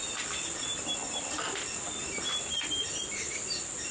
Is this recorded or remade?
recorded